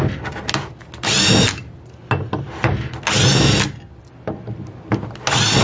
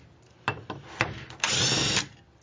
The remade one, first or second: second